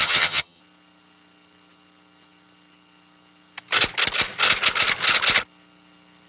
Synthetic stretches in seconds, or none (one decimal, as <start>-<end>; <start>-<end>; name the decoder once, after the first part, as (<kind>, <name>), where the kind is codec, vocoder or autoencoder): 0.0-0.6 (vocoder, HiFi-GAN)